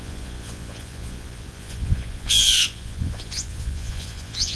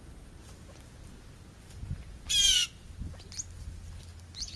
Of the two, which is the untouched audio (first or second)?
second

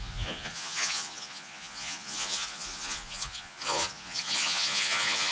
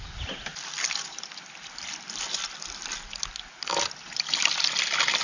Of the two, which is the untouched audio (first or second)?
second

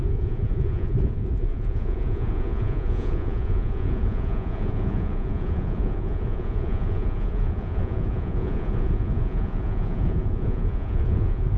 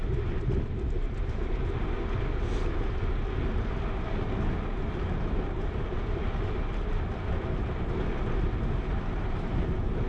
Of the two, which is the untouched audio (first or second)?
second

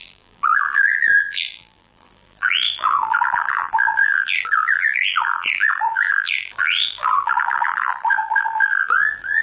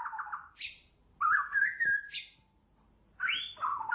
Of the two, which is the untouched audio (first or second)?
second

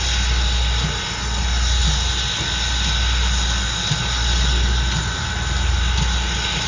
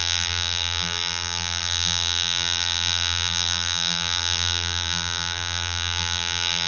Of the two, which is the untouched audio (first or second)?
first